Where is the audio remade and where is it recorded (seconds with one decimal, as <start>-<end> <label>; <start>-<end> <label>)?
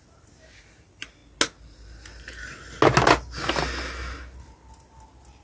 0.0-5.4 recorded